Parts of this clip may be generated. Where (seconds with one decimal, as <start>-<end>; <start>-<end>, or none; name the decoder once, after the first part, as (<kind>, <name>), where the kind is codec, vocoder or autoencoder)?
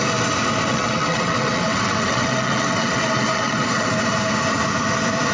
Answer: 0.7-3.9 (vocoder, WaveNeXt)